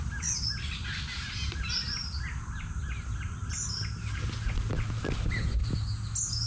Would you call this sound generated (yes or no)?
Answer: no